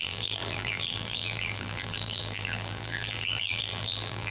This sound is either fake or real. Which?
fake